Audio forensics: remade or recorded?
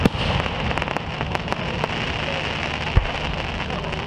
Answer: recorded